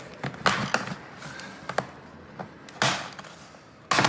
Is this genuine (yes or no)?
yes